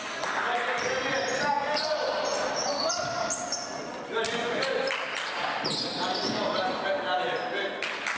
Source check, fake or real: real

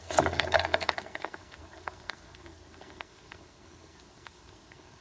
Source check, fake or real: fake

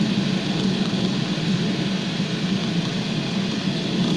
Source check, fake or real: real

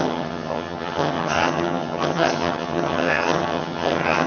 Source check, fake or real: fake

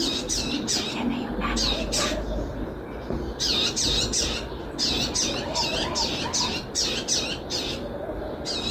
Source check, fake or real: real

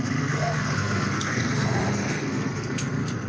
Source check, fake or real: fake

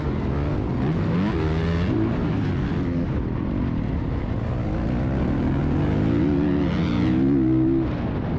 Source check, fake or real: real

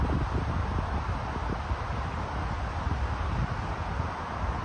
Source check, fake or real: real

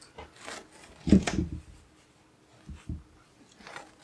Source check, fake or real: real